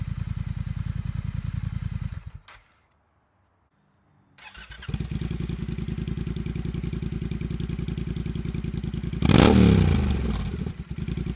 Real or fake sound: real